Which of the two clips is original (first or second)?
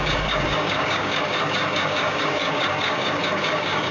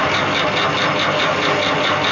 second